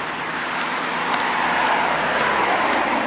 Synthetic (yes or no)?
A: no